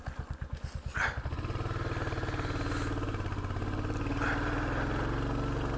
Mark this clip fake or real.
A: real